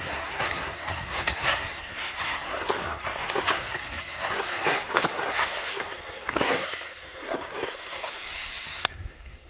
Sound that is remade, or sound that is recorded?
remade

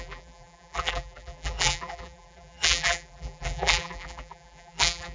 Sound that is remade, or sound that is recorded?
remade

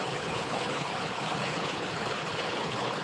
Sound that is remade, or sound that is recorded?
remade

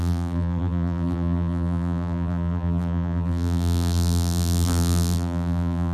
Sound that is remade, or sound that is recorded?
remade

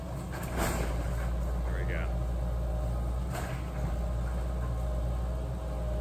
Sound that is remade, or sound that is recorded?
recorded